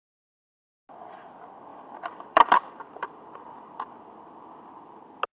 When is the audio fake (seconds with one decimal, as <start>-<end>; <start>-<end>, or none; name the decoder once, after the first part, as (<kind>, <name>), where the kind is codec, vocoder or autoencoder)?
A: 1.7-4.9 (vocoder, BigVGAN v2)